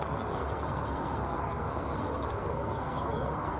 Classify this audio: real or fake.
fake